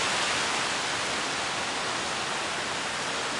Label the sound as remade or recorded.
recorded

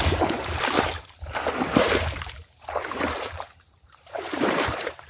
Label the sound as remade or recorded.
remade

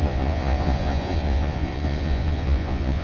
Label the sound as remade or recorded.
remade